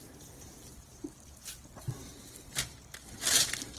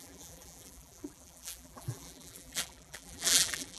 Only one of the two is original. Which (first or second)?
first